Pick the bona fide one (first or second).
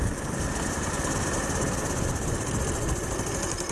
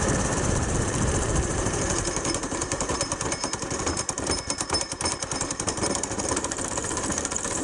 first